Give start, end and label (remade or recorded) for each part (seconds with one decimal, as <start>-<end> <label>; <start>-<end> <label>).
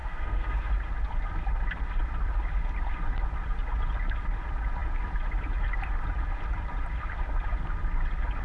0.0-0.7 remade; 0.7-8.4 recorded